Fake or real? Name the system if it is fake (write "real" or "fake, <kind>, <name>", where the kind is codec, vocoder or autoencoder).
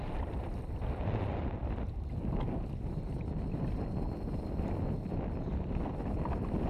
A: fake, vocoder, BigVGAN v2